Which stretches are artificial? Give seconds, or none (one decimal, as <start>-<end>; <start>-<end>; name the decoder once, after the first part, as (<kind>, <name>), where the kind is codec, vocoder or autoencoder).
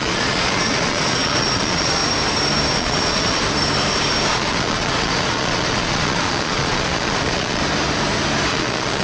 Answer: 0.0-2.0 (vocoder, Vocos); 2.7-3.4; 4.3-7.6; 8.5-9.0